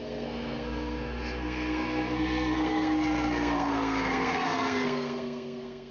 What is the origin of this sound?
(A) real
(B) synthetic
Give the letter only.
B